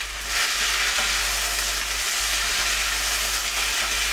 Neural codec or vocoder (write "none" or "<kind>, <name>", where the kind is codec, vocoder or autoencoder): none